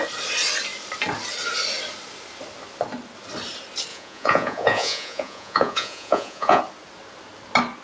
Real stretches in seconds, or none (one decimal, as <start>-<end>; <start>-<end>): 0.0-3.9; 6.6-7.8